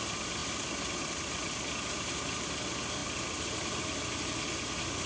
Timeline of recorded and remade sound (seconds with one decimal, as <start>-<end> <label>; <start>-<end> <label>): 0.0-5.1 recorded

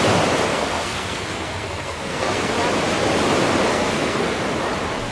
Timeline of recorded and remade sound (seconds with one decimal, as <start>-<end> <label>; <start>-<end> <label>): 0.0-0.5 recorded; 0.5-2.5 remade; 2.5-3.7 recorded; 3.7-4.4 remade; 4.4-5.1 recorded

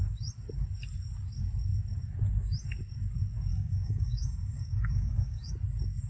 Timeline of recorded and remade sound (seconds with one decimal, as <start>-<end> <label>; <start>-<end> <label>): 0.0-3.5 recorded; 3.5-5.5 remade; 5.5-6.1 recorded

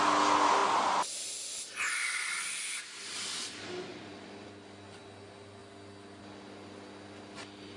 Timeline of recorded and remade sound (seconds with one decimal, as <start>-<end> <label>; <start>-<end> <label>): 0.0-3.9 recorded; 3.9-5.0 remade; 5.0-7.8 recorded

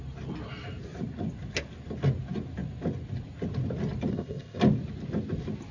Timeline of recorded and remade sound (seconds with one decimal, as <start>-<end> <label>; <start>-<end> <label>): 0.0-4.1 recorded; 4.1-4.6 remade; 4.6-5.7 recorded

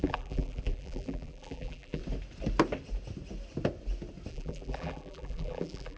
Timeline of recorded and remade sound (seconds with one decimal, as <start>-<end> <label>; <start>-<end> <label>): 0.0-2.0 remade; 2.0-4.3 recorded; 4.3-6.0 remade

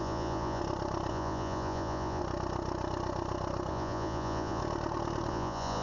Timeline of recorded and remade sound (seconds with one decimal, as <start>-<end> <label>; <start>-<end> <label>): 0.0-0.6 remade; 0.6-1.1 recorded; 1.1-2.2 remade; 2.2-3.7 recorded; 3.7-4.6 remade; 4.6-5.3 recorded; 5.3-5.8 remade